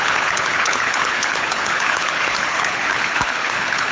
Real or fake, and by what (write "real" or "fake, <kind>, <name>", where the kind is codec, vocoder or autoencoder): fake, codec, HILCodec